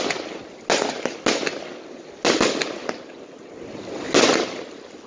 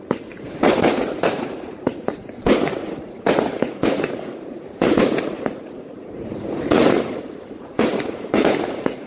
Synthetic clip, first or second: second